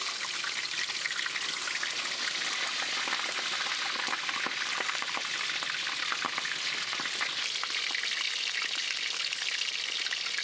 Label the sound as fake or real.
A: real